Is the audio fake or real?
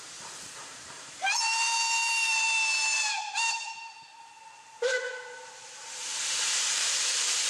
fake